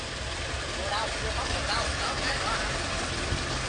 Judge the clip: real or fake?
real